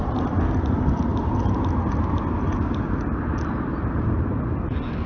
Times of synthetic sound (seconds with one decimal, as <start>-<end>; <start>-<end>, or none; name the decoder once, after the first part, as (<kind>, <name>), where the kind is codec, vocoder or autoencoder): none